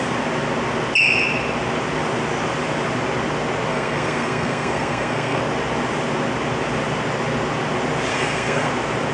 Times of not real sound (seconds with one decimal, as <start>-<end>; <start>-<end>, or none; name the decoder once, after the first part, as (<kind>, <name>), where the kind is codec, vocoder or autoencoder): 3.7-5.4 (codec, SNAC); 8.1-8.7